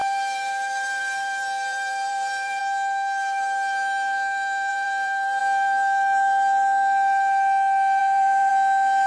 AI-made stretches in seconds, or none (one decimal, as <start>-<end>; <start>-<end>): 0.0-2.6; 4.7-5.4; 8.0-8.5